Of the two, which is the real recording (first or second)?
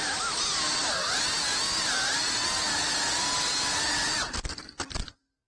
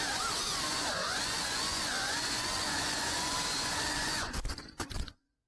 first